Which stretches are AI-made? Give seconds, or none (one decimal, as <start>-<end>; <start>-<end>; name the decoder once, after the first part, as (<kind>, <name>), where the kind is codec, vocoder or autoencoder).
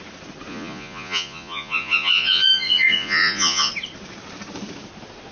0.5-3.7 (vocoder, Vocos)